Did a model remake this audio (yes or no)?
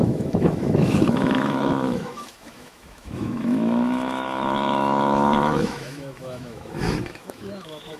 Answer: yes